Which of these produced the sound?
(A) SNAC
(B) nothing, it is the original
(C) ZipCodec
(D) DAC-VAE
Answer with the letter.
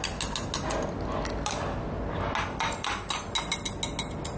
B